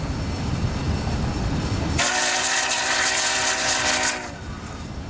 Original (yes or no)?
yes